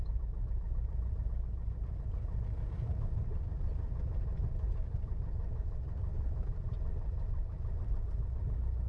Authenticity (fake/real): fake